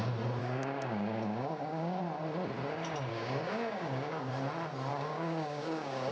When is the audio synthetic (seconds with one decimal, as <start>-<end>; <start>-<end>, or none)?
0.4-2.0; 3.1-4.3; 4.9-6.1